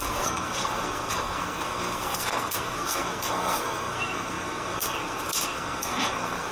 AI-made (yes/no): yes